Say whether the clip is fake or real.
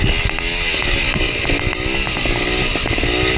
real